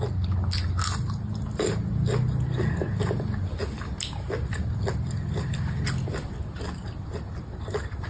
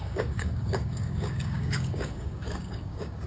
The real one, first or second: first